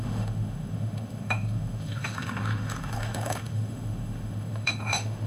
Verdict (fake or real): fake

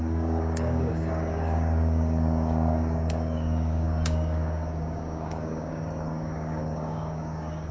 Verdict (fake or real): fake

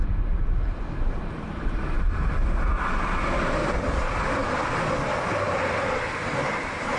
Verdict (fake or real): real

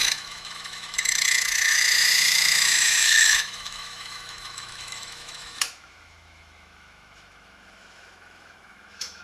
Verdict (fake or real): fake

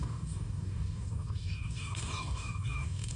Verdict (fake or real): fake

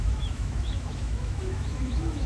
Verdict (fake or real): fake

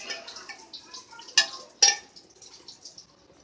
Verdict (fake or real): real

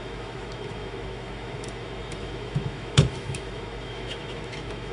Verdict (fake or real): fake